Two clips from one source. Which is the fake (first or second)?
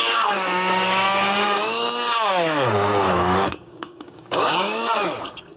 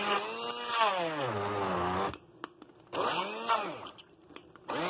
first